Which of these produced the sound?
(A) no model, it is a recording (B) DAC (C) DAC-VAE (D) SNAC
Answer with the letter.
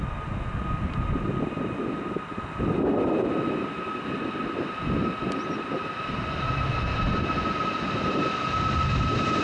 A